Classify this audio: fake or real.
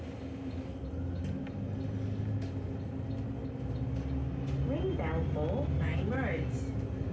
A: real